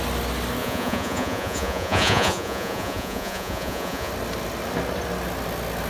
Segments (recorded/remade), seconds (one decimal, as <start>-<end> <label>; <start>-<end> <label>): 0.0-0.6 recorded; 0.6-4.1 remade; 4.1-5.9 recorded